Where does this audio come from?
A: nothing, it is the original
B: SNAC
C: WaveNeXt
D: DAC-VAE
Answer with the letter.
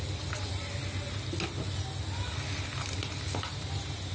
A